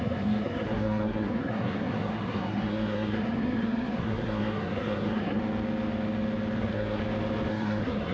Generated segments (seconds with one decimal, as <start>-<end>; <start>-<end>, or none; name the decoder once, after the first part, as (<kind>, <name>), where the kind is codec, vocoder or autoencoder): 0.0-5.4 (codec, SNAC); 6.6-7.0; 7.5-8.1